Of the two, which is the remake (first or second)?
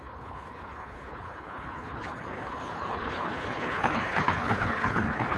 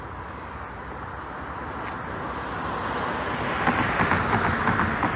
first